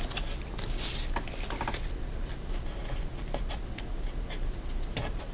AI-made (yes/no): no